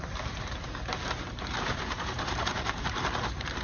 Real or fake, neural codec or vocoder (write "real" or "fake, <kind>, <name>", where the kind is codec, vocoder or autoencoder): fake, vocoder, BigVGAN v2